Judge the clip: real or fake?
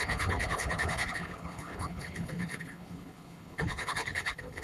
fake